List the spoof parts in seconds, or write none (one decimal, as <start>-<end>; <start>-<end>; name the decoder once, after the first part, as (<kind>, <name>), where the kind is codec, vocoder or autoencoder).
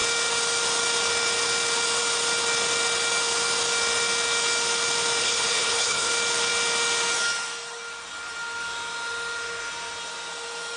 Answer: 5.2-6.1 (codec, HILCodec)